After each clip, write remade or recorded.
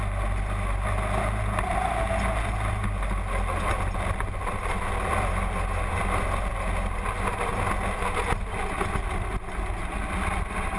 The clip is recorded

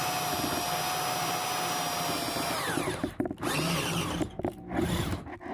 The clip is recorded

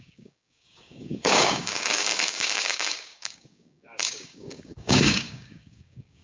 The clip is remade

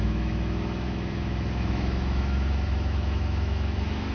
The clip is remade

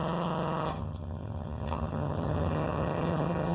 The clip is remade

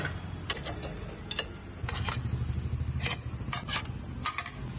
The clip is recorded